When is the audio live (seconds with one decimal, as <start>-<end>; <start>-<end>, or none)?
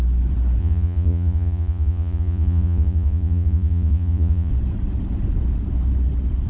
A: 0.0-0.6; 4.5-6.5